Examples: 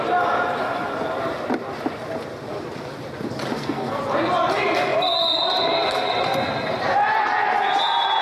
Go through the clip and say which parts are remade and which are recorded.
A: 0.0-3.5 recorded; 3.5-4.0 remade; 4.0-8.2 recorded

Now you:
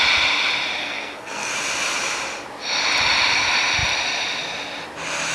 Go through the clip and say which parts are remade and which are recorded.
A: 0.0-0.8 recorded; 0.8-1.5 remade; 1.5-5.3 recorded

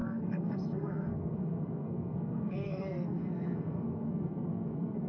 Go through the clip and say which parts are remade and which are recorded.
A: 0.0-5.1 remade

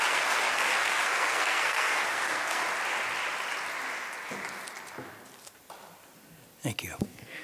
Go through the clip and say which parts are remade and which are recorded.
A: 0.0-2.6 remade; 2.6-7.0 recorded; 7.0-7.4 remade

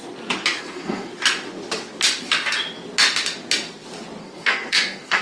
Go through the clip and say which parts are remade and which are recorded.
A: 0.0-0.6 recorded; 0.6-1.1 remade; 1.1-4.2 recorded; 4.2-5.2 remade